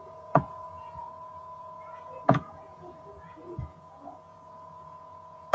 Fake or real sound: fake